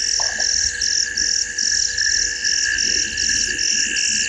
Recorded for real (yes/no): yes